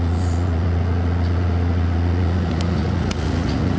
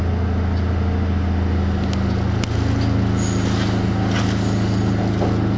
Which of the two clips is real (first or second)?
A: second